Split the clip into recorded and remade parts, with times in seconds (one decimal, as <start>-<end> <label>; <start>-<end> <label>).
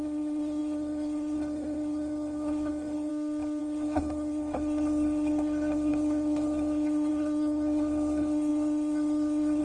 0.0-3.1 remade; 3.1-3.6 recorded; 3.6-9.6 remade